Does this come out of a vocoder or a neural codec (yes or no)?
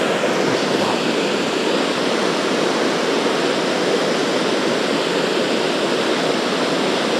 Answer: no